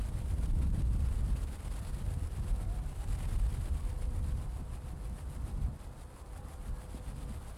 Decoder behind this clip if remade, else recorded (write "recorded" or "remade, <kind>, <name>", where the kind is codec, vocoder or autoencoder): recorded